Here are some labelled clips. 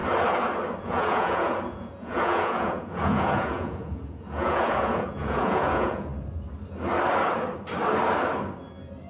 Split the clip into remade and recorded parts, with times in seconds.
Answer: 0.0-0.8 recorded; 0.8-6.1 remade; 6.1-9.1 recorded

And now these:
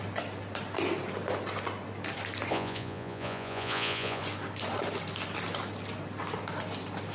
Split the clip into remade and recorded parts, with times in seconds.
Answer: 0.0-2.5 recorded; 2.5-4.2 remade; 4.2-7.1 recorded

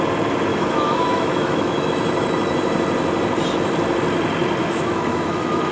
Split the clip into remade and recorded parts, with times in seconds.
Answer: 0.0-0.5 recorded; 0.5-1.9 remade; 1.9-4.6 recorded; 4.6-5.7 remade

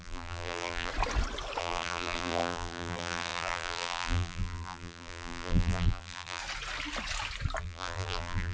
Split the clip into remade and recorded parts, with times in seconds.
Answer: 0.0-0.9 remade; 0.9-1.6 recorded; 1.6-6.4 remade; 6.4-7.6 recorded; 7.6-8.5 remade

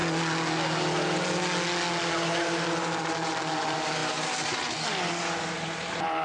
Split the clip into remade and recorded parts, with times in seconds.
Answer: 0.0-2.8 recorded; 2.8-6.2 remade

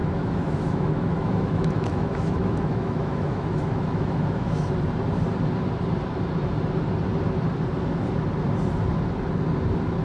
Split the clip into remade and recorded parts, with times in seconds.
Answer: 0.0-4.7 remade; 4.7-10.0 recorded

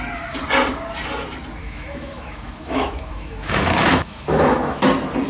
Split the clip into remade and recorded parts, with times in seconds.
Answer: 0.0-1.6 recorded; 1.6-4.8 remade; 4.8-5.3 recorded